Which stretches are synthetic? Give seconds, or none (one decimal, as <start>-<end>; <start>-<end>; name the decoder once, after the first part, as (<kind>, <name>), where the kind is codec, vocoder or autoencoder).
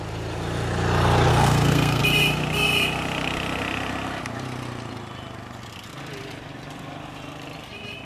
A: 1.3-2.0 (codec, SNAC)